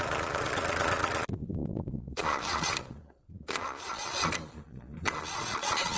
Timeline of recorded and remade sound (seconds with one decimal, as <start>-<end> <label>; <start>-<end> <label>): 0.0-6.0 remade